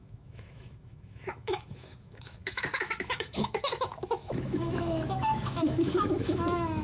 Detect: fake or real fake